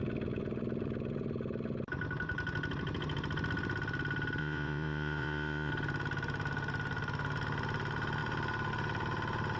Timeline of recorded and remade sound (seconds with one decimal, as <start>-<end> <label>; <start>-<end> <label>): 0.0-4.4 recorded; 4.4-5.7 remade; 5.7-9.6 recorded